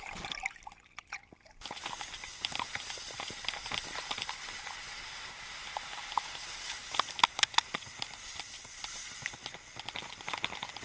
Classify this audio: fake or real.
real